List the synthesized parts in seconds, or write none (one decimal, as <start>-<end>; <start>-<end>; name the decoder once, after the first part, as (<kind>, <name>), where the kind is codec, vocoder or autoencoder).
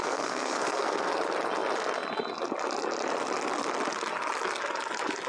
0.0-1.1 (codec, SNAC)